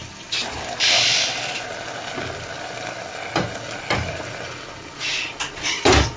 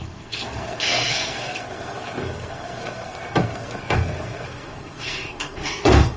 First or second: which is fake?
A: second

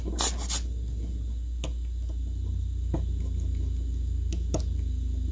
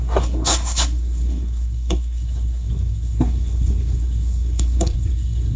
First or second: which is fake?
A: second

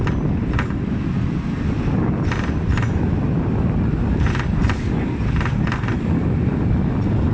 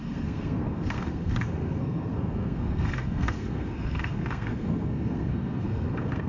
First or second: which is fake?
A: second